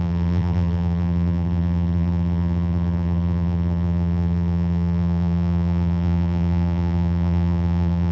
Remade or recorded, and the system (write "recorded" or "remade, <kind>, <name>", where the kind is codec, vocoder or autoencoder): remade, vocoder, BigVGAN v2